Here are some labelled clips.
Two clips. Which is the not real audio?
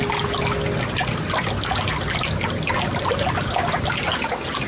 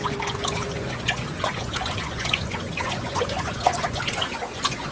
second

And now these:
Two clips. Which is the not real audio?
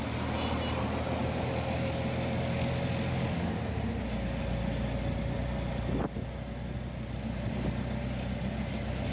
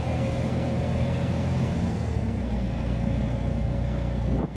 second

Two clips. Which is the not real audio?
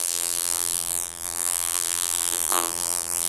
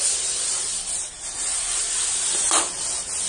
first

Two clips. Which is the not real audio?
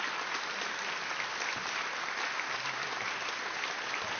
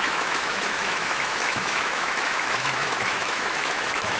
second